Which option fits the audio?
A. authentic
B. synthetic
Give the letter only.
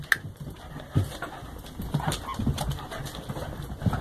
A